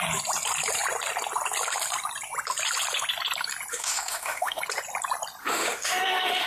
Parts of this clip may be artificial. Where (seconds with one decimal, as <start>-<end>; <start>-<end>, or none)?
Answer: 3.7-4.6; 5.4-6.5